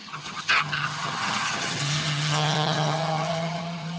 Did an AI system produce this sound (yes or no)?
yes